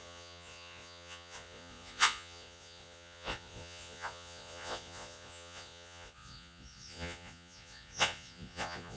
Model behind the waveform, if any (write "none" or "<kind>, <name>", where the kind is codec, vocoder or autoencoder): vocoder, Vocos